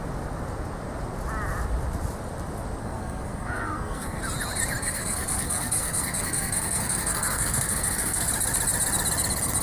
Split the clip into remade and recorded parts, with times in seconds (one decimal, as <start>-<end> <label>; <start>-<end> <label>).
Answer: 0.0-2.8 recorded; 2.8-4.2 remade; 4.2-4.8 recorded; 4.8-8.3 remade; 8.3-9.6 recorded